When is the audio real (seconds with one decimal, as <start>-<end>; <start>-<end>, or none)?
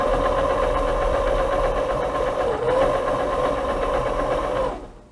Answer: 0.0-0.9; 4.0-5.1